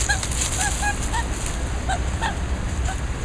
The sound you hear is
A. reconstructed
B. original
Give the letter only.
B